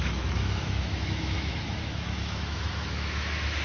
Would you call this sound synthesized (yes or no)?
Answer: yes